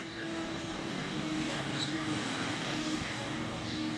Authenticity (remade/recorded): remade